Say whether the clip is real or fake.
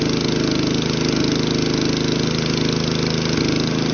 real